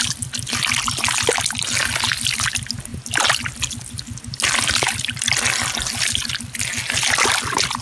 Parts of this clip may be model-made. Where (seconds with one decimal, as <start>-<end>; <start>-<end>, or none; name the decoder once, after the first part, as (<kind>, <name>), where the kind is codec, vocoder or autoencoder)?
none